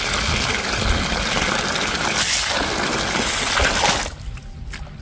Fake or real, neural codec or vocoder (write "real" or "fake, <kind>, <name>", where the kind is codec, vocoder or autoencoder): real